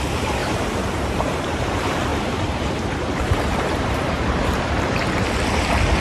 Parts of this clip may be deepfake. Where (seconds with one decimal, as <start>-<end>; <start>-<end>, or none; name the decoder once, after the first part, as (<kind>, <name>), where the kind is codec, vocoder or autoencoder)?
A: 0.4-1.6 (vocoder, BigVGAN v2); 2.1-4.6